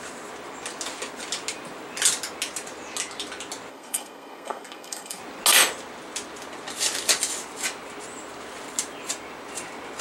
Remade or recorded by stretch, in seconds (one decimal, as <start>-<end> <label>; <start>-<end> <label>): 0.0-3.7 recorded; 3.7-5.2 remade; 5.2-10.0 recorded

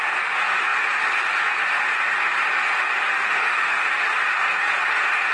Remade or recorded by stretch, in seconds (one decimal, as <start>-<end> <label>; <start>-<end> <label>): 0.0-3.2 recorded; 3.2-3.9 remade; 3.9-5.3 recorded

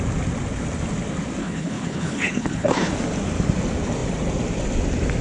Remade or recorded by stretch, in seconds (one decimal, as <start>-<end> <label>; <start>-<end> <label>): 0.0-1.4 recorded; 1.4-2.9 remade; 2.9-5.2 recorded

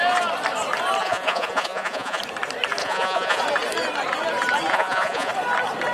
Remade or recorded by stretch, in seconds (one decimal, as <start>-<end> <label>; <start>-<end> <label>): 0.0-1.0 recorded; 1.0-2.2 remade; 2.2-2.8 recorded; 2.8-3.4 remade; 3.4-4.7 recorded; 4.7-5.3 remade; 5.3-5.9 recorded

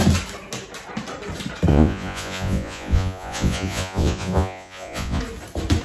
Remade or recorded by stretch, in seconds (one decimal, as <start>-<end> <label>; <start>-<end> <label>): 0.0-1.7 recorded; 1.7-5.2 remade; 5.2-5.8 recorded

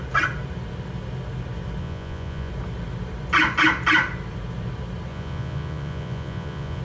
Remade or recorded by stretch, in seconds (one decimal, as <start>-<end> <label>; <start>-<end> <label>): 0.0-1.8 recorded; 1.8-2.5 remade; 2.5-5.1 recorded; 5.1-6.8 remade

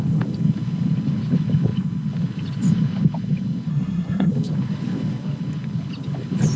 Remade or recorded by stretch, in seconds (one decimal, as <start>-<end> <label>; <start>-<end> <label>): 0.0-3.7 recorded; 3.7-4.3 remade; 4.3-6.6 recorded